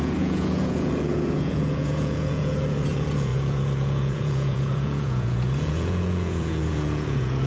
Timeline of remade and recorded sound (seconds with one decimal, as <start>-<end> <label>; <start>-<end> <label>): 0.0-7.5 remade